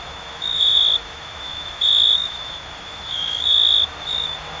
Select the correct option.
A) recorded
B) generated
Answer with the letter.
B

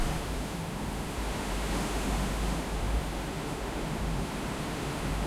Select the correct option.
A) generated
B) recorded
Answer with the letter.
A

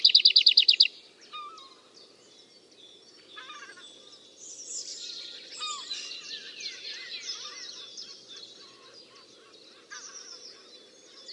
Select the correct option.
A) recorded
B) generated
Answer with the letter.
A